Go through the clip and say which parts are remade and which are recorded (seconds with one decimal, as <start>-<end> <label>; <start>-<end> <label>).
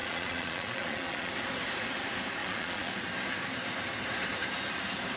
0.0-1.3 remade; 1.3-2.4 recorded; 2.4-2.9 remade; 2.9-5.2 recorded